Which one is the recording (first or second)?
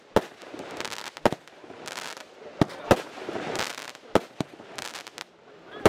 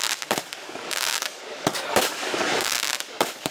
first